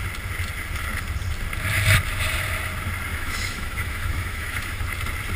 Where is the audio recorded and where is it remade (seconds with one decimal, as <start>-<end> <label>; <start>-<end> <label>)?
0.0-3.1 recorded; 3.1-4.8 remade; 4.8-5.4 recorded